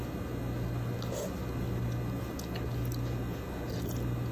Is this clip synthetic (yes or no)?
no